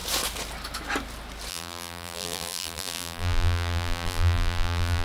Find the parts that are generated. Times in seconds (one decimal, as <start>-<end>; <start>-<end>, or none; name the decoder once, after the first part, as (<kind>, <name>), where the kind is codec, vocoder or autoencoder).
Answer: 1.5-5.0 (vocoder, BigVGAN v2)

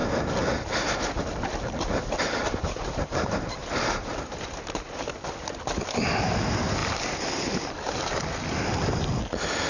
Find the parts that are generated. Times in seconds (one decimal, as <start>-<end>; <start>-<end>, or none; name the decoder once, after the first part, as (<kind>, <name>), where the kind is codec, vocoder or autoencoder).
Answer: 2.4-3.8 (vocoder, BigVGAN v2)

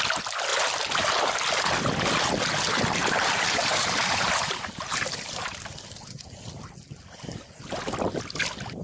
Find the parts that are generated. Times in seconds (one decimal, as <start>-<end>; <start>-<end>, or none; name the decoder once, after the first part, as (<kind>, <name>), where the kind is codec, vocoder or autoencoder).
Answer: 3.0-5.6 (vocoder, BigVGAN v2)

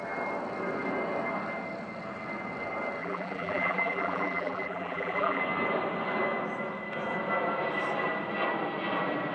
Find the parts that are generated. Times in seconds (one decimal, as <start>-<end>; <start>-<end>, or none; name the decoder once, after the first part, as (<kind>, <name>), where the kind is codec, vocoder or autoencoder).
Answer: 3.0-5.4 (vocoder, BigVGAN v2)

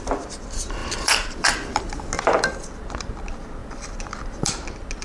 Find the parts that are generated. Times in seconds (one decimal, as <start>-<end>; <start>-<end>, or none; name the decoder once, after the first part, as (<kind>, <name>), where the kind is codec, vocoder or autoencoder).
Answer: 0.8-1.8 (vocoder, BigVGAN v2); 3.6-4.5

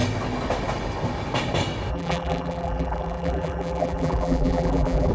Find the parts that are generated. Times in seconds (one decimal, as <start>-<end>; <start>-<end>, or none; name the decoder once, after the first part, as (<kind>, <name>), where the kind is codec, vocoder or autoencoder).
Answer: 1.9-5.1 (vocoder, BigVGAN v2)

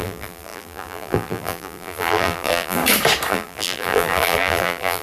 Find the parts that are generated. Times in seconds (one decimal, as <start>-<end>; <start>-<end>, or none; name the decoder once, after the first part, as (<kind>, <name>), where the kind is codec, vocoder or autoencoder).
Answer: 0.0-2.8 (vocoder, BigVGAN v2); 3.3-5.0